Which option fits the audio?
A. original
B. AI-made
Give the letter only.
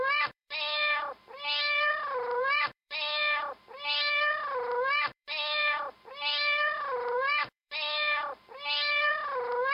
B